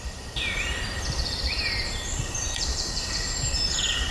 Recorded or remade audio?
remade